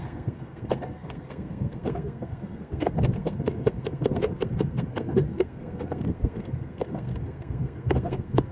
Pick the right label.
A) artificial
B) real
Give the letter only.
A